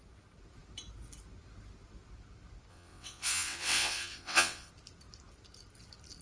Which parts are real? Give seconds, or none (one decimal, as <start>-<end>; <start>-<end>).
0.0-2.7; 4.7-6.2